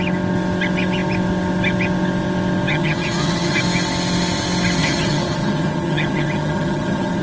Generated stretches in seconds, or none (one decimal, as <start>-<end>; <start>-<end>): 2.7-3.6; 4.8-7.2